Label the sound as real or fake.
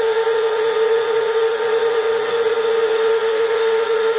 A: fake